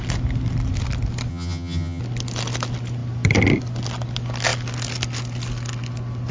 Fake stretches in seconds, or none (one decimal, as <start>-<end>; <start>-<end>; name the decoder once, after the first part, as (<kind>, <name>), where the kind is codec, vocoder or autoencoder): 1.3-2.0 (vocoder, HiFi-GAN)